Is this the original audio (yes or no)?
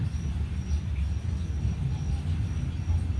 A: yes